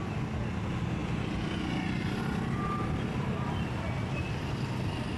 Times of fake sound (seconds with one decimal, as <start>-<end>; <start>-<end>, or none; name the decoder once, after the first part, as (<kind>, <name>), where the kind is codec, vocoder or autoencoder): none